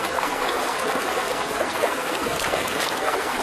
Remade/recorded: remade